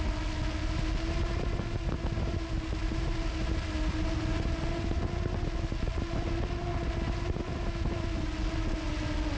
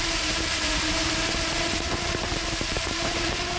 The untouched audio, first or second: first